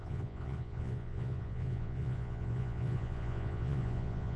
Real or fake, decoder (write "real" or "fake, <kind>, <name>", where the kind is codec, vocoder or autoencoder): fake, vocoder, Vocos